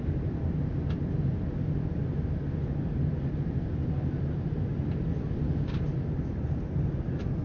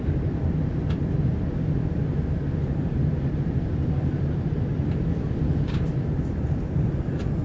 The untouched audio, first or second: first